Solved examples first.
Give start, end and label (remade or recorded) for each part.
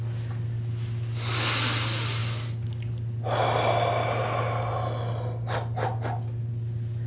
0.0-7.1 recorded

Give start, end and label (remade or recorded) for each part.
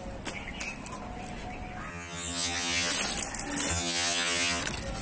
0.0-1.9 recorded; 1.9-2.9 remade; 2.9-3.7 recorded; 3.7-4.6 remade; 4.6-5.0 recorded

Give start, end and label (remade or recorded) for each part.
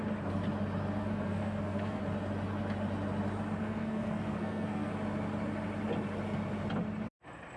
0.0-1.0 recorded; 1.0-2.0 remade; 2.0-3.6 recorded; 3.6-4.9 remade; 4.9-7.6 recorded